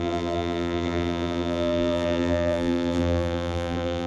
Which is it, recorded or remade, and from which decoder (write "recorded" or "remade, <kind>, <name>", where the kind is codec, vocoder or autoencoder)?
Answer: remade, vocoder, BigVGAN v2